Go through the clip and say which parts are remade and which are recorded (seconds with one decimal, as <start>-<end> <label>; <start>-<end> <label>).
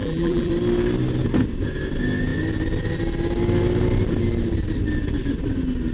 0.0-0.5 remade; 0.5-5.9 recorded